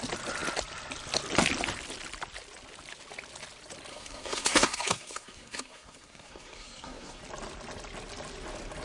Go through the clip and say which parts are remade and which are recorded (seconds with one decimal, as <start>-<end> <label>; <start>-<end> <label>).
0.0-3.9 recorded; 3.9-7.2 remade; 7.2-8.8 recorded